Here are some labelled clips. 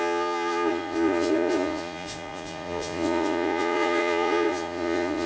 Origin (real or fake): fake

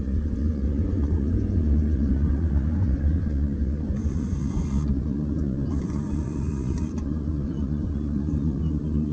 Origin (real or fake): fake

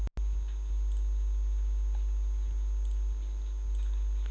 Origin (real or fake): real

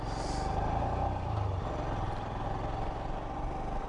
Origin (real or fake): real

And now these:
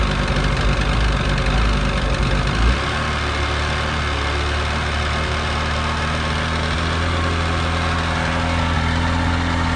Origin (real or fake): real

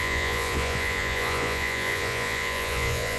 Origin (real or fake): fake